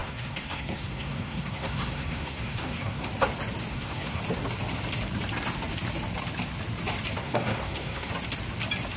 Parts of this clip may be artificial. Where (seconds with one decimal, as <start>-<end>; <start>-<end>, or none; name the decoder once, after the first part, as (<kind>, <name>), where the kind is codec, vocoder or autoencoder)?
0.0-3.1 (codec, SNAC); 3.7-4.2; 7.2-8.1